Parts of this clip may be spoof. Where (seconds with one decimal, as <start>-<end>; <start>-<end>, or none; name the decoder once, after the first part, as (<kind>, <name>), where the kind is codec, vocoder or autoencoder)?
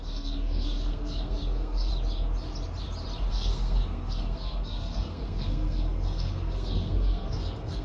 0.0-1.9 (codec, SNAC); 3.3-7.8